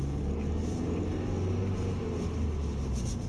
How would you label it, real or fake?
real